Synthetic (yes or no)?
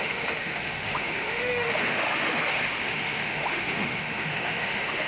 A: yes